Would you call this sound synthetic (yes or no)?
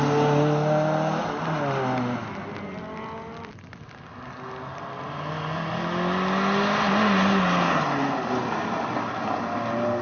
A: no